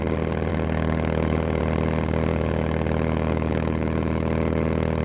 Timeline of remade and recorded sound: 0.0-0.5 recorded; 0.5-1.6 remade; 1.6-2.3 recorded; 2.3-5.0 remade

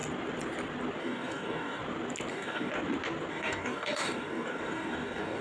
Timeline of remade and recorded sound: 0.0-1.0 recorded; 1.0-1.8 remade; 1.8-2.3 recorded; 2.3-2.7 remade; 2.7-3.3 recorded; 3.3-5.4 remade

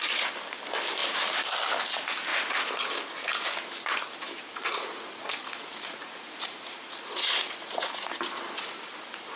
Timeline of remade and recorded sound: 0.0-2.3 recorded; 2.3-2.9 remade; 2.9-4.6 recorded; 4.6-8.1 remade; 8.1-9.4 recorded

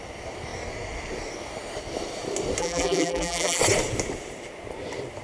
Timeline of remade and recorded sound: 0.0-2.6 recorded; 2.6-3.6 remade; 3.6-5.2 recorded

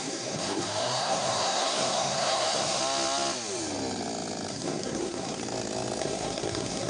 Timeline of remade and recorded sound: 0.0-2.8 remade; 2.8-4.5 recorded; 4.5-5.4 remade; 5.4-6.0 recorded; 6.0-6.9 remade

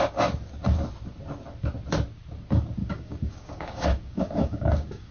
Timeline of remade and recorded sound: 0.0-2.8 recorded; 2.8-5.1 remade

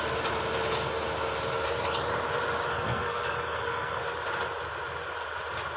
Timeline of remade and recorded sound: 0.0-2.7 recorded; 2.7-4.0 remade; 4.0-5.8 recorded